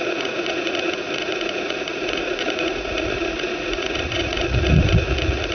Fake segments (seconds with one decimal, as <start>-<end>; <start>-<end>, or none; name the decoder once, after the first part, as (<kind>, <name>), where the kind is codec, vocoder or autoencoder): 0.0-5.5 (vocoder, Vocos)